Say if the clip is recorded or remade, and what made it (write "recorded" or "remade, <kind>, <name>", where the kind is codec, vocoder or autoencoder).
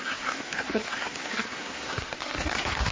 remade, codec, SNAC